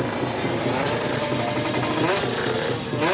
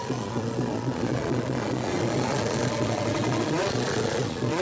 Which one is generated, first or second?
second